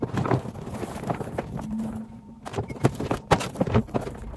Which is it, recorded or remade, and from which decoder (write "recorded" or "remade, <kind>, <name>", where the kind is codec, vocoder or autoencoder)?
recorded